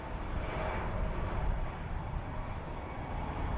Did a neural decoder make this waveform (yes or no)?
no